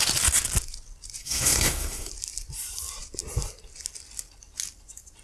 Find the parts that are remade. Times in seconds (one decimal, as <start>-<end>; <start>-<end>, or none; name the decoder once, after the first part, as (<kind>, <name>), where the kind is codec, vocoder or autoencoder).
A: 1.2-2.1 (codec, SNAC)